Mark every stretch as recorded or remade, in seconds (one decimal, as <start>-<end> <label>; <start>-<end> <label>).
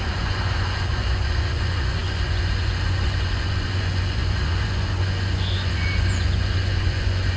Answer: 0.0-7.4 remade